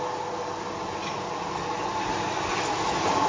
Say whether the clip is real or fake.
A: real